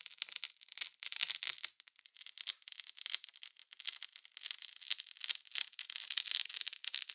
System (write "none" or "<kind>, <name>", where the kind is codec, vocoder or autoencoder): none